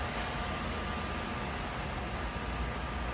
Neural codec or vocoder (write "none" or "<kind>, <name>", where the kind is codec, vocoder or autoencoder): none